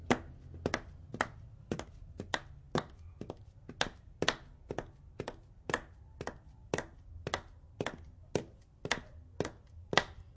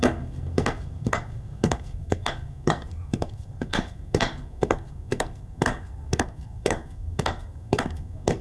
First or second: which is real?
first